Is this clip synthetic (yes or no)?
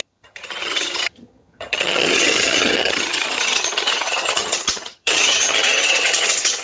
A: yes